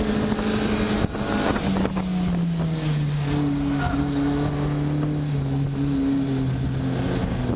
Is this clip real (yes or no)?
yes